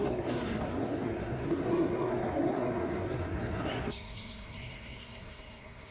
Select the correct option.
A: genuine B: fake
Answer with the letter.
B